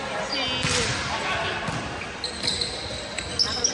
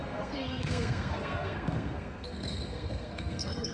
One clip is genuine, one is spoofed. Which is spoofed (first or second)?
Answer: second